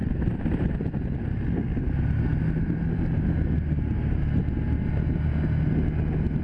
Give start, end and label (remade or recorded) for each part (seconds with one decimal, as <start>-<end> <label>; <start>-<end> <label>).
0.0-0.7 remade; 0.7-6.4 recorded